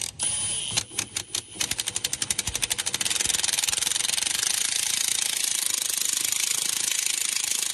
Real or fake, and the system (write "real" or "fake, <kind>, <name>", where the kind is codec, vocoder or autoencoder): real